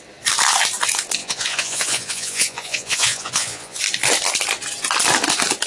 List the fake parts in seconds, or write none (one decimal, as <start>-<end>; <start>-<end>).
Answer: 1.2-3.8